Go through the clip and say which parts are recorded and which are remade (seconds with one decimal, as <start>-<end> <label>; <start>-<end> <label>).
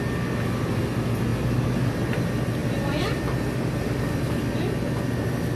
0.0-2.6 recorded; 2.6-4.4 remade; 4.4-5.6 recorded